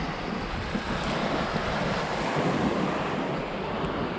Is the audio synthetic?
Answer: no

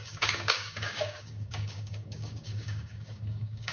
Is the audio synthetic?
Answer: yes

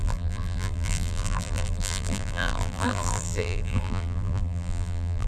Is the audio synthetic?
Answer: yes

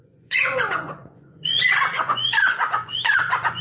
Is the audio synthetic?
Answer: yes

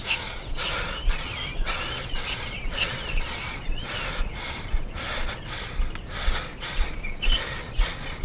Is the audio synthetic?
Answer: yes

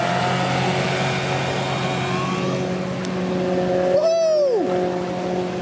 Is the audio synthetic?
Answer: no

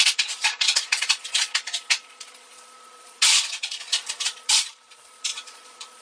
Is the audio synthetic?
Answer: yes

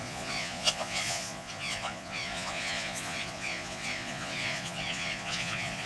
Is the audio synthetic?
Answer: yes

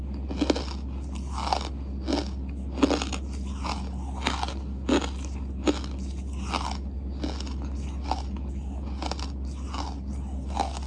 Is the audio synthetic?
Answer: no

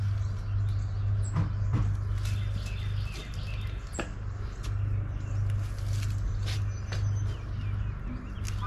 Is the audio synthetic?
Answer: no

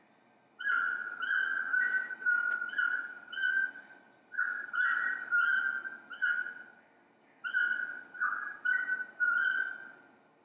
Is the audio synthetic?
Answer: no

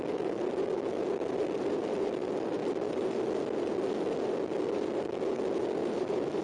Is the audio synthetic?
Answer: yes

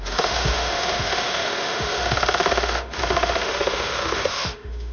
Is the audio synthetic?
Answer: yes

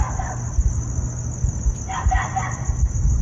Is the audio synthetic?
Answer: no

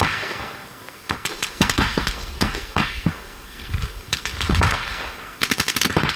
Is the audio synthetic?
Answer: yes